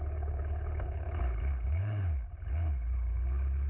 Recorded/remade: remade